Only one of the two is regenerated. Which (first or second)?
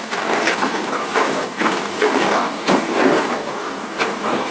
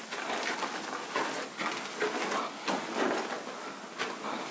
first